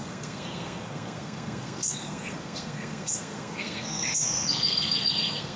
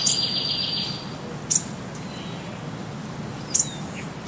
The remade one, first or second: first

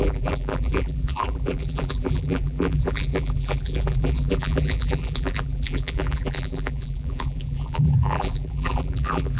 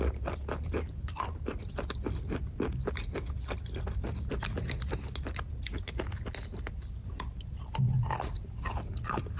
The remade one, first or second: first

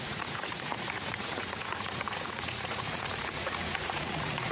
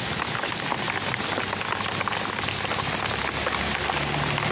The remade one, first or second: first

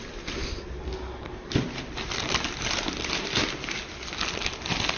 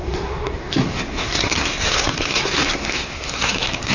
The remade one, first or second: second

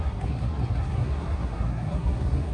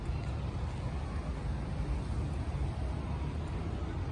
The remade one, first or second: first